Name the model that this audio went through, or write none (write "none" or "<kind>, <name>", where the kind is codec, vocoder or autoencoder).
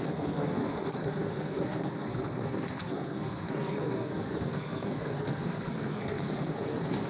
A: codec, SNAC